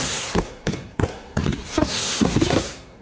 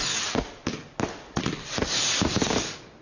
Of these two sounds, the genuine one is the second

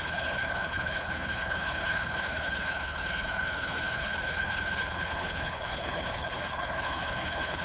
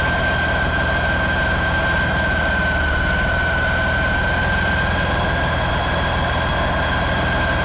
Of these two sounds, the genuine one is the second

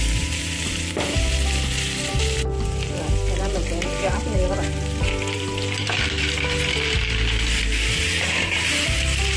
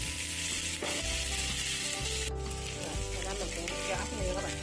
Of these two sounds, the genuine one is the second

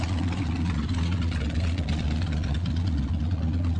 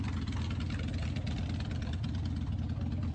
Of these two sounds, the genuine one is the second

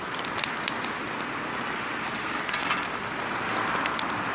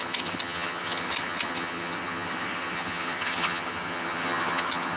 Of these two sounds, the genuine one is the first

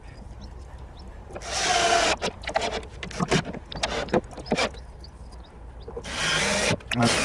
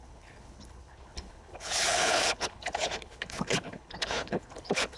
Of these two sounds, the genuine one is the first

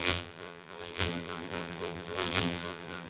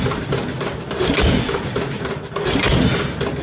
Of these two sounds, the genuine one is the second